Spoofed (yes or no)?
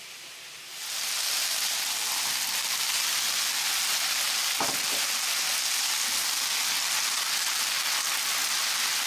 no